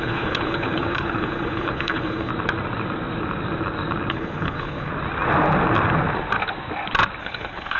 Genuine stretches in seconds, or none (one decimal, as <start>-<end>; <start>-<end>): 2.3-4.1; 4.9-7.2